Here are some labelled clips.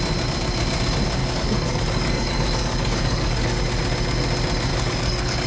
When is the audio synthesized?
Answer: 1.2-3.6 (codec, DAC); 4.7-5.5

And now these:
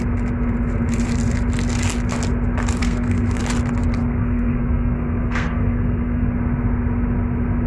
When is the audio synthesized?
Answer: 2.8-3.4 (codec, SNAC); 4.0-6.3

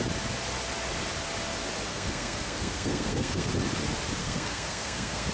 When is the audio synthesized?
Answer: 1.9-3.5 (codec, SNAC); 4.2-5.3

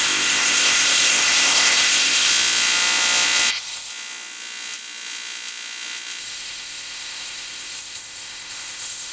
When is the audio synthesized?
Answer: 0.0-2.3 (codec, ZipCodec); 3.5-3.9; 6.2-9.1

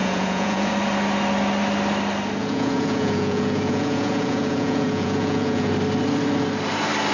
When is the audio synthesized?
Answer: 0.0-0.7 (vocoder, Vocos); 2.4-5.7

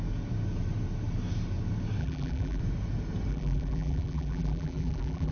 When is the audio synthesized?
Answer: 2.0-2.6 (vocoder, BigVGAN v2); 3.3-5.3